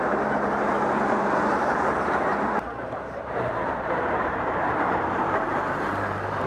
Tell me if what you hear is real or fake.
fake